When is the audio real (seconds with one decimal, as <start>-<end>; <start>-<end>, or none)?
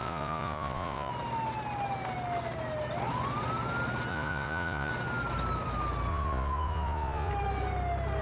1.1-4.1; 4.9-6.1; 7.3-8.2